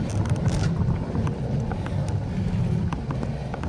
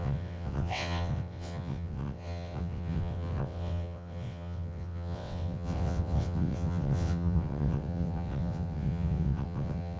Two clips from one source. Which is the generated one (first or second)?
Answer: second